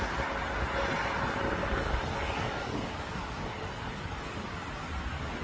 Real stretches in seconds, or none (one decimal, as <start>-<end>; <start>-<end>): 0.0-1.6; 4.7-5.4